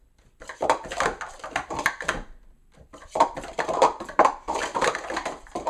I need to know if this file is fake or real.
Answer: fake